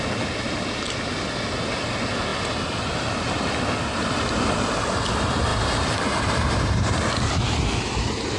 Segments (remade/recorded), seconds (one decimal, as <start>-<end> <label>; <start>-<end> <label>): 0.0-5.5 recorded; 5.5-6.9 remade; 6.9-8.4 recorded